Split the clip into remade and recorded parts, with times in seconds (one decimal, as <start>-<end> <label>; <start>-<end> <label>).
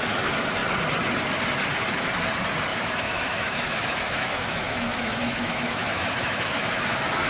0.0-2.7 recorded; 2.7-6.7 remade; 6.7-7.3 recorded